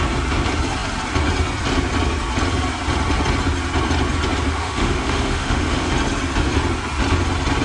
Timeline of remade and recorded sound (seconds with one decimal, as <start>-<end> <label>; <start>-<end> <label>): 0.0-4.5 recorded; 4.5-5.9 remade; 5.9-7.6 recorded